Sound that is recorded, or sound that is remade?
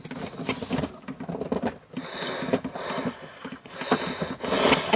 recorded